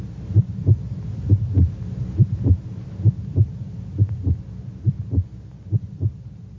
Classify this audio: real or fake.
real